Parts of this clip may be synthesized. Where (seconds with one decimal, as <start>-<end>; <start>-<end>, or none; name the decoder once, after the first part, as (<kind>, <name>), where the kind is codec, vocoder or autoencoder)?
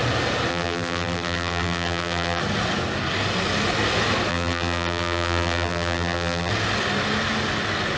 0.5-2.4 (vocoder, BigVGAN v2); 4.3-6.5